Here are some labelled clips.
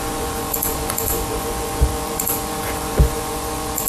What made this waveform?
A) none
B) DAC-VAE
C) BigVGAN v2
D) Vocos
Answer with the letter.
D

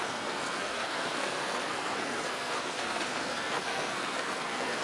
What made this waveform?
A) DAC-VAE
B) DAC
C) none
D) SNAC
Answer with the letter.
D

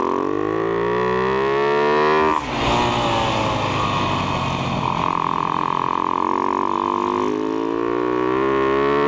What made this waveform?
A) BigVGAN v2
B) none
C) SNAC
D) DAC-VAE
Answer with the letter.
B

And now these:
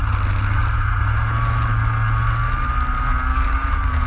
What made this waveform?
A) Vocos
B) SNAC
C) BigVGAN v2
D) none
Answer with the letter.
D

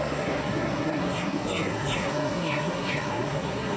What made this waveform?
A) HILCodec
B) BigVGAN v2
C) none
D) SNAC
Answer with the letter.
D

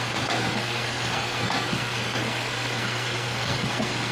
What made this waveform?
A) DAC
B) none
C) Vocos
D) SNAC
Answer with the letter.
D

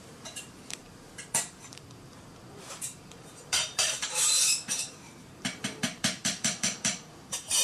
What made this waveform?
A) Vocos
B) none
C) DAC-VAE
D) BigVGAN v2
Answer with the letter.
D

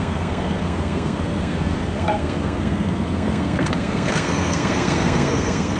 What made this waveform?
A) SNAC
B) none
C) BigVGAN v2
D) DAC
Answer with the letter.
A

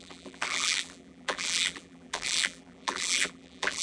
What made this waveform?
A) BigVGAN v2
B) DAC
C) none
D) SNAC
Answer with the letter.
A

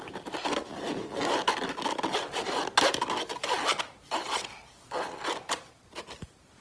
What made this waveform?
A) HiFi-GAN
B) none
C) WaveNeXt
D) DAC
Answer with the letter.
B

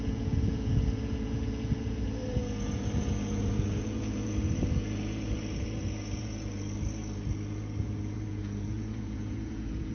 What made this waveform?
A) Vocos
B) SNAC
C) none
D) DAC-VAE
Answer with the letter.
A